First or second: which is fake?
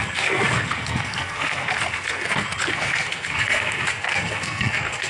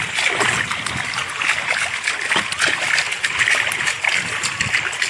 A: first